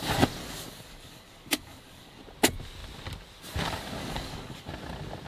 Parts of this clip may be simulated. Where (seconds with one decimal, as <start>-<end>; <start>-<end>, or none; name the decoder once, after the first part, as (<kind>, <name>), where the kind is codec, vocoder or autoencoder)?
0.4-2.2 (codec, DAC); 4.0-4.7